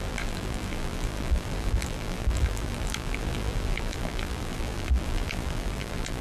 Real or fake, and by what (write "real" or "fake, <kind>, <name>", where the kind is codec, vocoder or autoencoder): fake, vocoder, BigVGAN v2